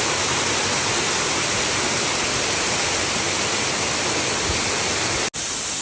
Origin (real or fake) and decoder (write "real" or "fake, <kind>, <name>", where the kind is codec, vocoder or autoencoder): real